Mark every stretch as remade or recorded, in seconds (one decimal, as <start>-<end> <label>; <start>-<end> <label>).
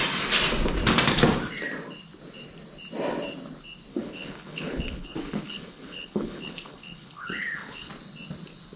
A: 0.0-3.9 recorded; 3.9-7.9 remade; 7.9-8.8 recorded